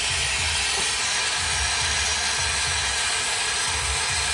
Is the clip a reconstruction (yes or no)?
no